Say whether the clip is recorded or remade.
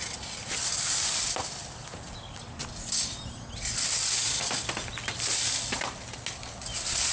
recorded